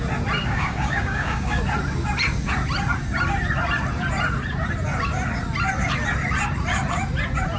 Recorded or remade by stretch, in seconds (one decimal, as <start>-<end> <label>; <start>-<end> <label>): 0.0-0.4 recorded; 0.4-1.6 remade; 1.6-7.6 recorded